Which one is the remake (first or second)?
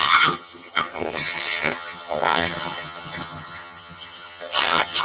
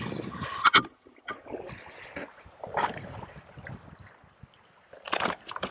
first